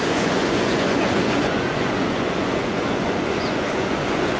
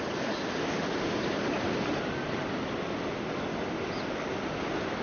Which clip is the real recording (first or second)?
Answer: second